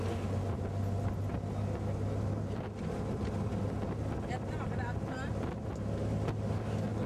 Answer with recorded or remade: recorded